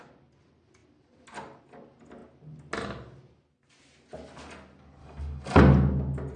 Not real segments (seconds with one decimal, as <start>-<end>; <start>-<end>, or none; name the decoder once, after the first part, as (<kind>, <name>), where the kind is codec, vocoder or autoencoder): 5.0-5.6 (codec, DAC)